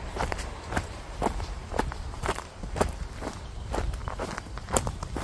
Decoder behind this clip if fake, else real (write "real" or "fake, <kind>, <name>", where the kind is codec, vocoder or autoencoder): fake, vocoder, BigVGAN v2